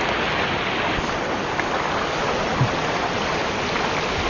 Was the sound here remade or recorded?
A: recorded